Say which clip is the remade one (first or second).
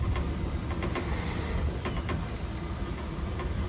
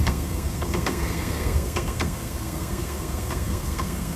second